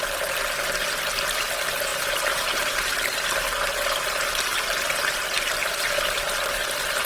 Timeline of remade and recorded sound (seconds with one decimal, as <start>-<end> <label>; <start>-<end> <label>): 0.0-1.9 recorded; 1.9-2.8 remade; 2.8-7.1 recorded